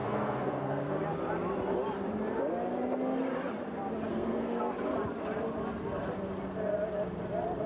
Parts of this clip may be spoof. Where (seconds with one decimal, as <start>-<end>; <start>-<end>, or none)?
0.0-1.0; 4.1-4.6